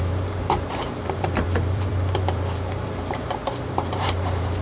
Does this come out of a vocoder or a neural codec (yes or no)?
yes